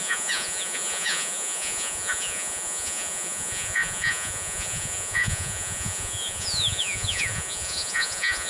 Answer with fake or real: fake